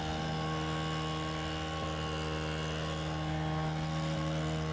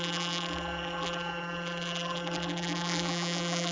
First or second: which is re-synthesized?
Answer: second